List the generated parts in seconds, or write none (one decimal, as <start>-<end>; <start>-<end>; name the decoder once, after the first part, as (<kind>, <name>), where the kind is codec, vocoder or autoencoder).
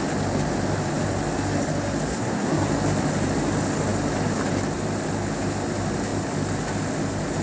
2.1-2.7 (codec, SNAC)